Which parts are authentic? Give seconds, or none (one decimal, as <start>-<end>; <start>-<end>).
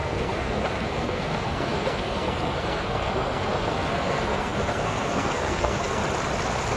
6.0-6.8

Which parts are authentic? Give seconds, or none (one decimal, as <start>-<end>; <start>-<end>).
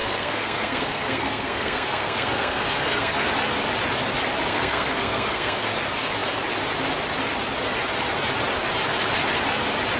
3.3-4.5; 5.8-10.0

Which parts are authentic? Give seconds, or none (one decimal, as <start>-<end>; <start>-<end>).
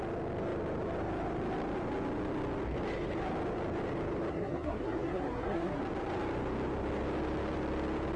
0.0-4.3; 5.8-8.2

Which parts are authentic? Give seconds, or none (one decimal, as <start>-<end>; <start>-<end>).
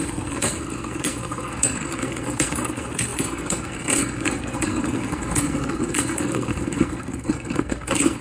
none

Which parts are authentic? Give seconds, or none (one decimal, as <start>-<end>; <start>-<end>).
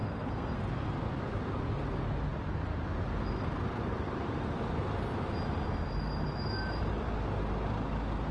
0.6-8.3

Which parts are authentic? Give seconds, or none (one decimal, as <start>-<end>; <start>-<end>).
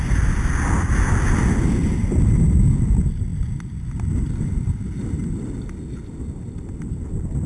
0.0-7.5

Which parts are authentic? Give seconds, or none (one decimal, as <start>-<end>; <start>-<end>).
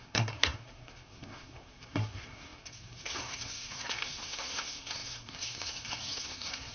none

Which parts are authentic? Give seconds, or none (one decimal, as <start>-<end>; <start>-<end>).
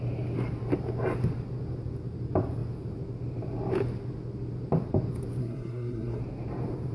0.0-5.4; 6.2-6.9